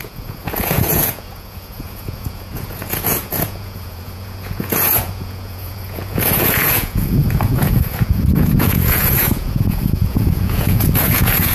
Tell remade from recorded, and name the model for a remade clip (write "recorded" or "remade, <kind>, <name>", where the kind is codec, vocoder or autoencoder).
remade, vocoder, Vocos